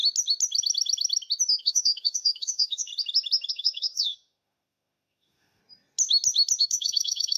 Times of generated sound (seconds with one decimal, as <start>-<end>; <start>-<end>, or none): 1.6-2.9; 3.5-5.6; 6.6-7.4